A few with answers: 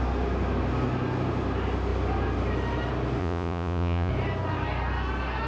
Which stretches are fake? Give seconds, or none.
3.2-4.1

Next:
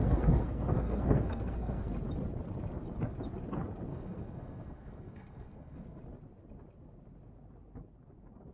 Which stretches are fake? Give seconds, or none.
0.0-1.9; 3.9-6.0

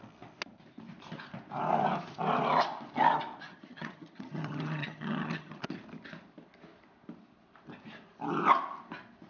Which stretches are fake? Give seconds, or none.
3.5-5.6

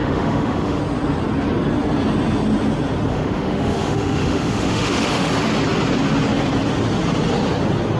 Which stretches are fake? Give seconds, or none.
0.0-0.8; 3.1-5.3